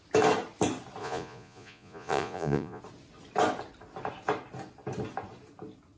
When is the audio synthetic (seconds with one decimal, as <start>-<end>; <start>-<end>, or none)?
1.0-2.8